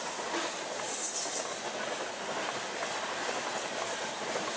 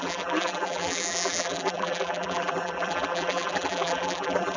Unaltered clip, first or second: first